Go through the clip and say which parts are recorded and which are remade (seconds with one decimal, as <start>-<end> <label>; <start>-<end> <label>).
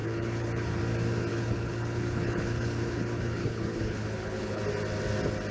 0.0-0.8 remade; 0.8-1.3 recorded; 1.3-4.6 remade; 4.6-5.5 recorded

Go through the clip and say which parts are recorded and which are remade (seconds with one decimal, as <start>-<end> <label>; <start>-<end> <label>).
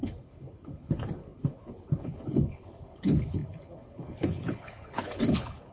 0.0-5.7 remade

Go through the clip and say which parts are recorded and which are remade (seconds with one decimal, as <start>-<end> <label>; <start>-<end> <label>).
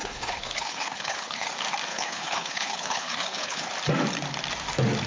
0.0-1.5 remade; 1.5-1.9 recorded; 1.9-3.7 remade; 3.7-5.1 recorded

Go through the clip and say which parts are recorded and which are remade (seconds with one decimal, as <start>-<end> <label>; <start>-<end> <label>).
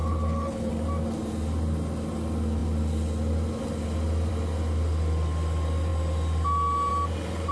0.0-0.7 remade; 0.7-7.5 recorded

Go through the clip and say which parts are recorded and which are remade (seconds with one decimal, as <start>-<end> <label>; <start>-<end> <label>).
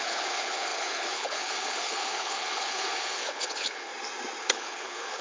0.0-3.9 remade; 3.9-4.4 recorded; 4.4-5.2 remade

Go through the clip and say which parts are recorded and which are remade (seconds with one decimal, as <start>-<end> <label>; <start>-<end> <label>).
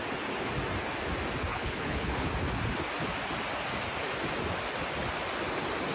0.0-1.5 recorded; 1.5-2.3 remade; 2.3-5.9 recorded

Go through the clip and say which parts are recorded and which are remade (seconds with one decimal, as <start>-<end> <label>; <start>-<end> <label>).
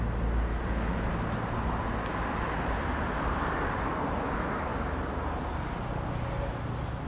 0.0-7.1 recorded